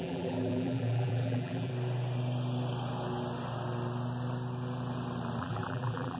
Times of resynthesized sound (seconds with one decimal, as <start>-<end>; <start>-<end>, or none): 0.0-1.7; 5.4-6.2